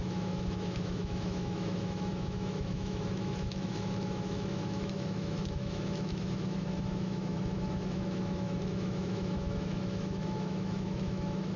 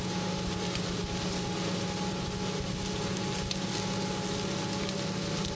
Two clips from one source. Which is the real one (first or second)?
second